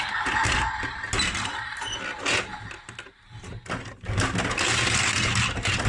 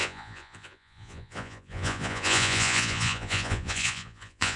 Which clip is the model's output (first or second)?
second